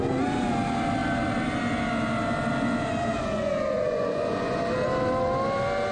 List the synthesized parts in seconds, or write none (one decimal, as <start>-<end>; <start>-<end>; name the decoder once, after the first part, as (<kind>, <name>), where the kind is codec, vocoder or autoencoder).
3.1-4.6 (vocoder, Vocos)